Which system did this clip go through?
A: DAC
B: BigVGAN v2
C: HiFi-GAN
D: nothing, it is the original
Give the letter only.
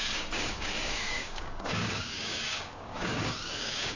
A